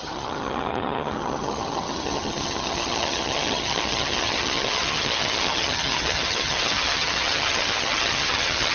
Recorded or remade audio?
remade